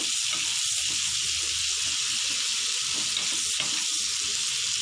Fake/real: real